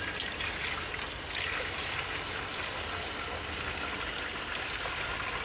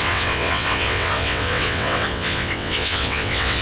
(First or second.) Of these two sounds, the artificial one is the second